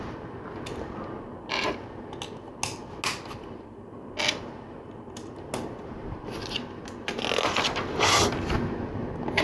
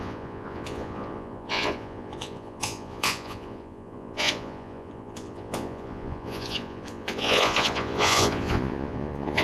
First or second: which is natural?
first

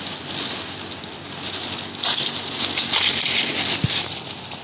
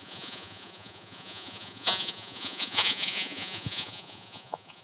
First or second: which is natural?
first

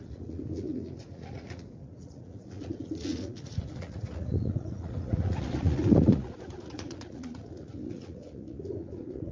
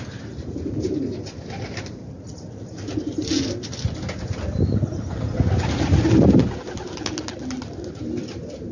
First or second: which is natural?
second